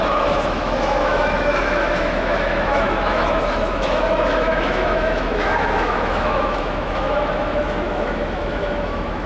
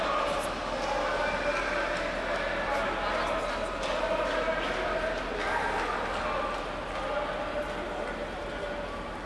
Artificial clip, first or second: first